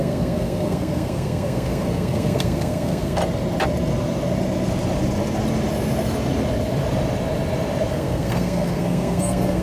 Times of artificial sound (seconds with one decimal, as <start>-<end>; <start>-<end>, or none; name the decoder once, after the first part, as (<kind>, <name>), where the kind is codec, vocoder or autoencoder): 0.0-3.2 (codec, SNAC); 7.9-9.6